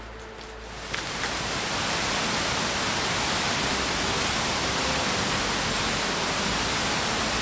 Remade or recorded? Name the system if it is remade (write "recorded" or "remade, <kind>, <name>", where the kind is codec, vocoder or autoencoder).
recorded